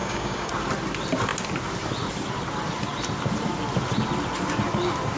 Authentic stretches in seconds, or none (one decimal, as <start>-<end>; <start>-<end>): 0.5-5.2